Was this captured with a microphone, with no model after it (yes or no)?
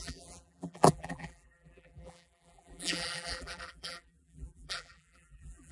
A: no